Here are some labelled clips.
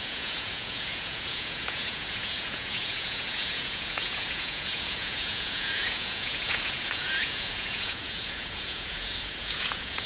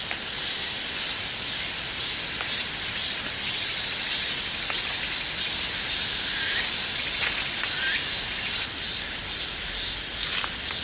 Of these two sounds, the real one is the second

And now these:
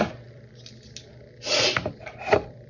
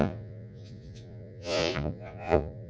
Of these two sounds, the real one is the first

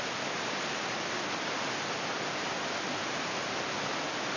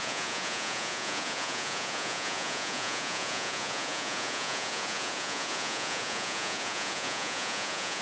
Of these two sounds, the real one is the first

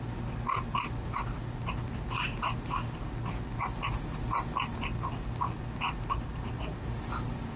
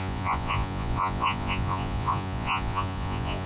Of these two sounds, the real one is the first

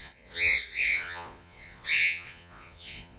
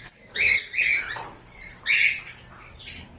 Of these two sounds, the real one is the second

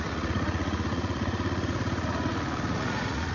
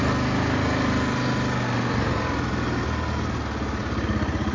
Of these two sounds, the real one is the second